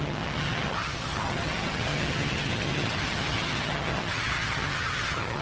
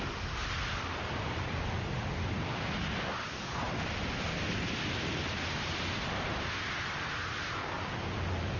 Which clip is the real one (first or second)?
second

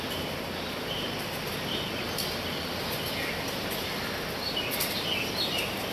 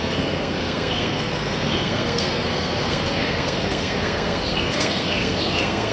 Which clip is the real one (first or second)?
first